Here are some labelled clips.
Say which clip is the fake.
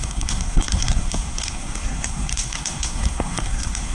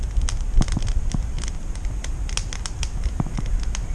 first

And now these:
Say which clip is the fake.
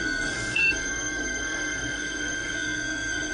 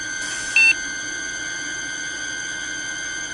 first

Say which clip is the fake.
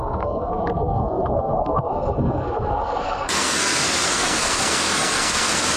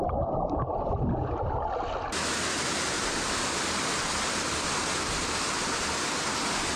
first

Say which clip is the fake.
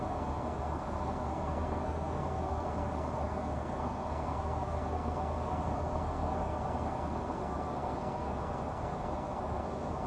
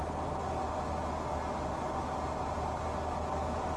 first